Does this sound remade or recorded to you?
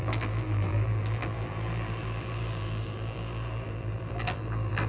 remade